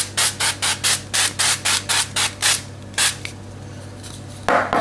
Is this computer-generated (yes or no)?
no